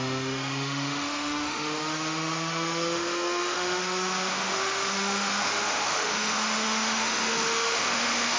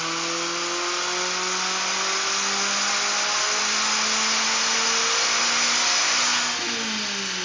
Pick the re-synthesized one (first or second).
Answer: first